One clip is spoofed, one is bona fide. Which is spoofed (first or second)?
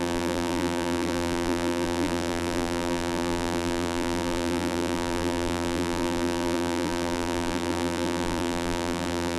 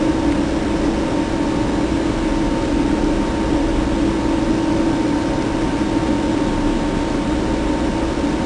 first